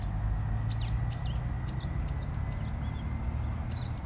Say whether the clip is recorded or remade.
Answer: recorded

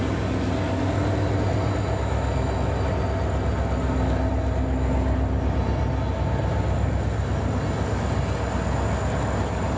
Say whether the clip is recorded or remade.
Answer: recorded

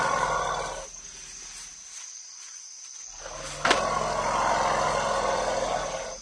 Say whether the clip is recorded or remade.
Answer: recorded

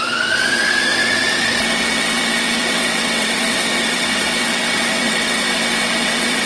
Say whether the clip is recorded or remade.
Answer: remade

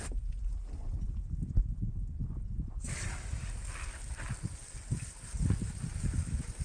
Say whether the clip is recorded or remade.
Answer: recorded